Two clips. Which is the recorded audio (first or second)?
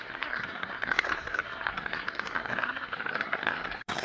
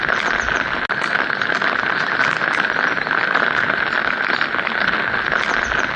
second